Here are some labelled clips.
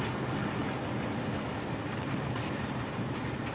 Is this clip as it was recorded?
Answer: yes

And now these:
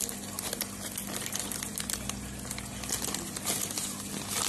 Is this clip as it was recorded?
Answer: yes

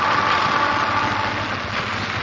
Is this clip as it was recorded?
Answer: yes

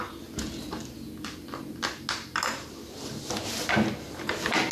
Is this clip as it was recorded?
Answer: yes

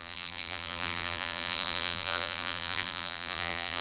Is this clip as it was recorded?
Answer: no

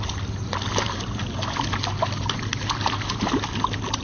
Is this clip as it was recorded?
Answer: yes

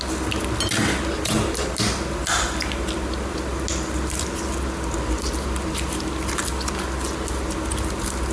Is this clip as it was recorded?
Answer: yes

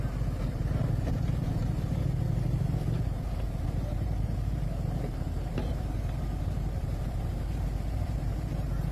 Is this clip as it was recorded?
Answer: no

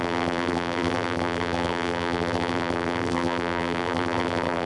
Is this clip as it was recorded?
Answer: no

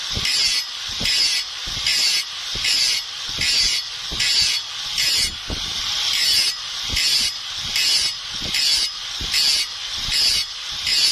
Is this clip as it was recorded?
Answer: yes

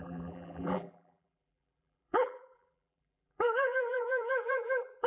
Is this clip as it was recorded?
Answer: no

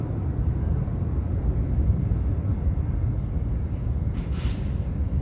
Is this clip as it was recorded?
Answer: no